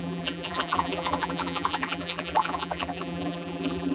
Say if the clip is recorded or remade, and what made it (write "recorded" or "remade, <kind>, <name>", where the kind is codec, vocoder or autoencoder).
remade, vocoder, BigVGAN v2